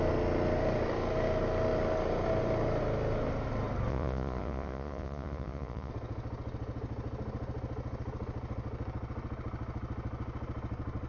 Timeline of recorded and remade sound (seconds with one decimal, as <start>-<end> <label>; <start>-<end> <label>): 0.0-3.9 recorded; 3.9-5.9 remade; 5.9-11.1 recorded